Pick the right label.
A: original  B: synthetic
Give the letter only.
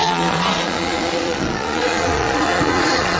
B